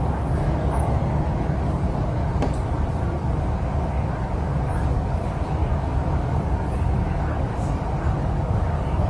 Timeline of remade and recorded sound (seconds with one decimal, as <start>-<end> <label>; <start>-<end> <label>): 0.0-1.0 remade; 1.0-1.6 recorded; 1.6-2.2 remade; 2.2-4.1 recorded; 4.1-7.5 remade; 7.5-8.2 recorded; 8.2-9.1 remade